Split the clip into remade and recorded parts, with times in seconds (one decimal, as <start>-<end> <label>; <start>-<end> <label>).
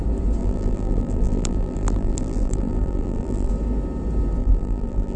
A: 0.0-0.4 recorded; 0.4-3.5 remade; 3.5-4.4 recorded; 4.4-5.2 remade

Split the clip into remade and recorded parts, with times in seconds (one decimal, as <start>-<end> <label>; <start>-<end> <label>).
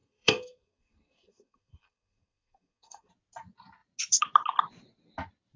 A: 0.0-3.1 remade; 3.1-5.6 recorded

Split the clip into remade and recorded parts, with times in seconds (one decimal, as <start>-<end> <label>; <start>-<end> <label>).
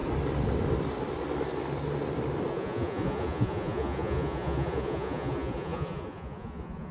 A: 0.0-2.5 recorded; 2.5-6.9 remade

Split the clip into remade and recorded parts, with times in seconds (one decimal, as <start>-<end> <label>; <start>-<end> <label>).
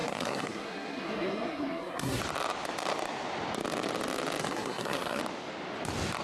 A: 0.0-2.2 remade; 2.2-4.4 recorded; 4.4-5.2 remade; 5.2-6.2 recorded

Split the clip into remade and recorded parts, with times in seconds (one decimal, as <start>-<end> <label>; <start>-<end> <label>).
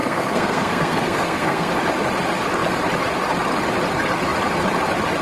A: 0.0-1.7 remade; 1.7-5.2 recorded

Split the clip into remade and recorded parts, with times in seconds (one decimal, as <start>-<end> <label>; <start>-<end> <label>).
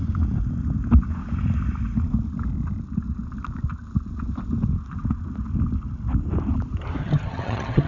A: 0.0-7.0 recorded; 7.0-7.9 remade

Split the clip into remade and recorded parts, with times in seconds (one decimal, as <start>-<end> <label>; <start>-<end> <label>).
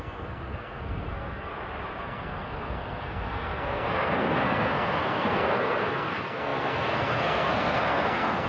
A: 0.0-1.5 remade; 1.5-2.0 recorded; 2.0-8.5 remade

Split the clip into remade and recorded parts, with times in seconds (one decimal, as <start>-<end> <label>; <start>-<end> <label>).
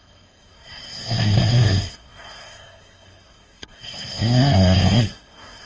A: 0.0-5.7 remade